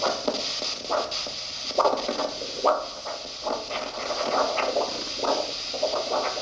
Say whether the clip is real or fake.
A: real